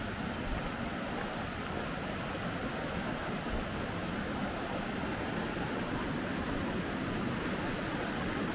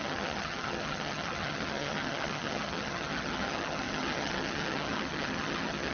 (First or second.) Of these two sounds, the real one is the first